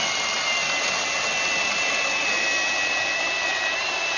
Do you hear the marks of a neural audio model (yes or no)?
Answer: no